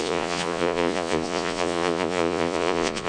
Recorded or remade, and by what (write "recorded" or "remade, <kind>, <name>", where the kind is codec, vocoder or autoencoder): remade, vocoder, Vocos